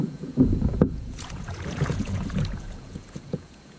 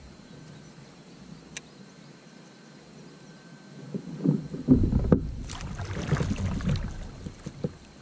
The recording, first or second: second